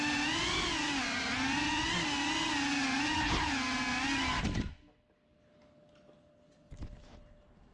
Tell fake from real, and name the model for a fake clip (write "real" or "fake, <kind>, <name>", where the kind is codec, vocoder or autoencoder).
real